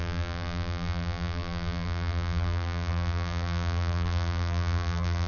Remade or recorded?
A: remade